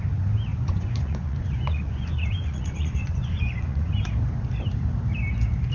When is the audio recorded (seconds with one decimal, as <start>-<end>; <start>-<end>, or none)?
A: 0.0-0.5; 3.9-5.7